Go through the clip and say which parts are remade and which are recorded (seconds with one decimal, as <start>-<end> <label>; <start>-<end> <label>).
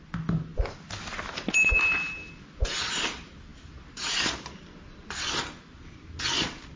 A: 0.0-6.8 recorded